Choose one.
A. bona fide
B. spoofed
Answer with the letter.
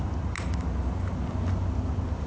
A